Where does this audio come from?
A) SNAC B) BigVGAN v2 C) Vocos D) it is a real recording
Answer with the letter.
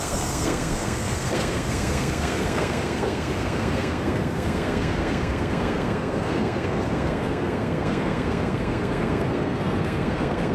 A